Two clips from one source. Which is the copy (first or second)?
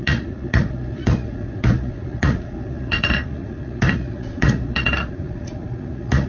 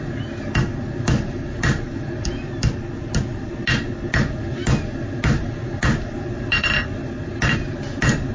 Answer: first